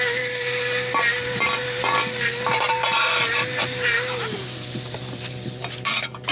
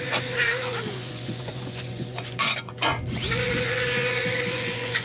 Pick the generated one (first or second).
second